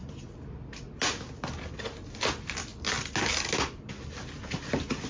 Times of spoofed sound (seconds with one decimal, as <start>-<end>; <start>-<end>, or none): none